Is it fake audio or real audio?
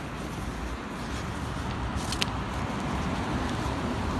real